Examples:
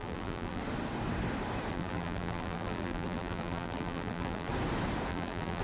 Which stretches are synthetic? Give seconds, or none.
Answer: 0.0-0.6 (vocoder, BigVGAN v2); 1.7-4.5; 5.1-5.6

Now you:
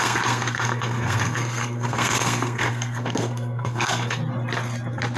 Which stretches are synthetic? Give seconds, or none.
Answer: 0.0-4.2 (codec, SNAC)

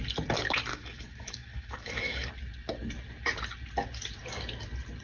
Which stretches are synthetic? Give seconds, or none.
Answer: 0.7-2.3 (autoencoder, DAC-VAE)